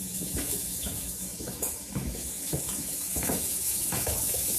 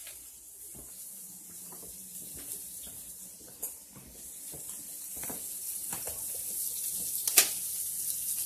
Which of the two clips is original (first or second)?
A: second